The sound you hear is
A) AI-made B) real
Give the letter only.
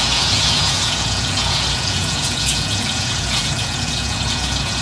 A